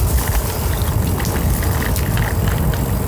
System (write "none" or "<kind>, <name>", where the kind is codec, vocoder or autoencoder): none